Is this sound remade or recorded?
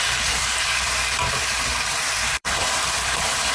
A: remade